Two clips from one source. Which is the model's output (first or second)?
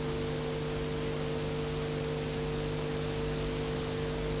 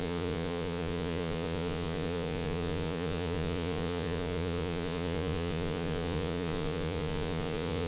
second